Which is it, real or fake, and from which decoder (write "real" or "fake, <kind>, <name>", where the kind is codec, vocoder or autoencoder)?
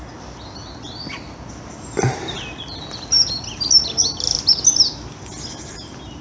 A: real